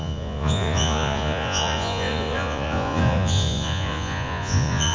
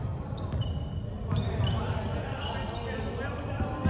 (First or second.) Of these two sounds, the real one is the second